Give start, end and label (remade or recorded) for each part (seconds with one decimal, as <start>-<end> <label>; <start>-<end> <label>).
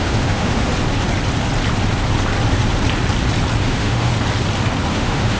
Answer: 0.0-0.7 remade; 0.7-3.6 recorded; 3.6-4.1 remade; 4.1-4.9 recorded; 4.9-5.4 remade